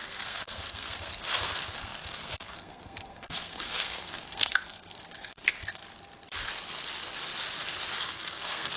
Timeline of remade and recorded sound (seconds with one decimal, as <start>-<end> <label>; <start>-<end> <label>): 0.0-5.8 remade; 5.8-8.0 recorded; 8.0-8.8 remade